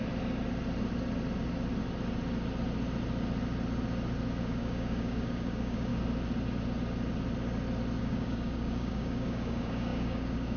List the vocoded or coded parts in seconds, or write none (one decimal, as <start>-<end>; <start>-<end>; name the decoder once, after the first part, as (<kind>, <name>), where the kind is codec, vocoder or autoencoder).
4.4-5.9 (codec, DAC); 8.0-10.6